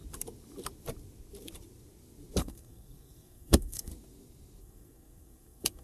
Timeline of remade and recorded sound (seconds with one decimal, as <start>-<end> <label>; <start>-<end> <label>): 0.0-2.4 recorded; 2.4-3.9 remade; 3.9-4.6 recorded; 4.6-5.8 remade